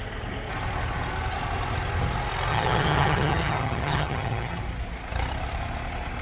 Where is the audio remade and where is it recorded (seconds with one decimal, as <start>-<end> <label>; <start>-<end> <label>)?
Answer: 0.0-2.5 recorded; 2.5-4.6 remade; 4.6-6.2 recorded